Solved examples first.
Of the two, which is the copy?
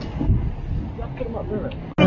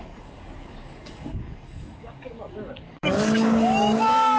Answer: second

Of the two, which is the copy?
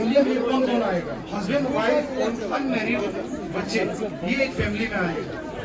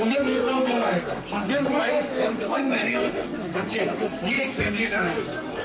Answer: second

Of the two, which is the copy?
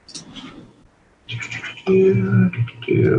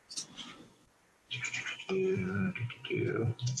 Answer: second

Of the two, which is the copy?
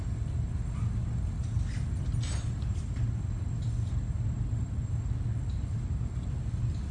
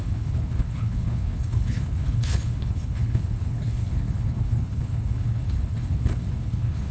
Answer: second